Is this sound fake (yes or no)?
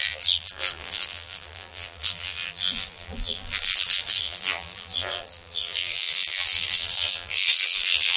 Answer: yes